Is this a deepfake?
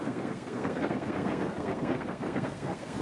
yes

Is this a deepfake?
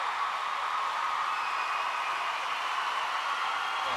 no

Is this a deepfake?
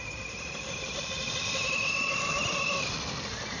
no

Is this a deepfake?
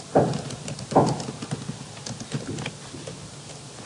no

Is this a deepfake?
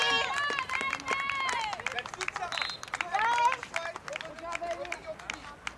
no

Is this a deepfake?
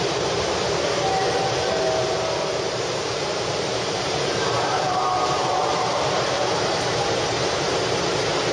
yes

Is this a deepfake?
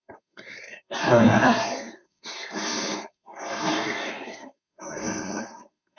yes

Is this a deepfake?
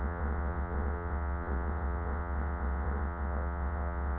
yes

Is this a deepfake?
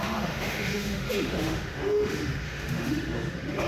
yes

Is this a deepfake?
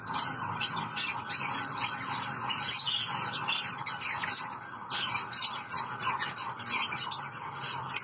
no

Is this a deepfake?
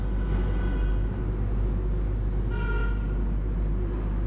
no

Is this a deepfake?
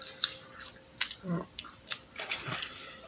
yes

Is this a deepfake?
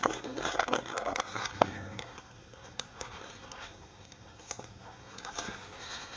yes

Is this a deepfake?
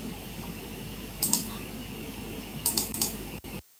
yes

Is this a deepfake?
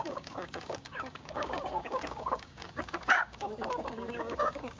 yes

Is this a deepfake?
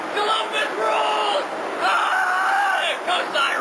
no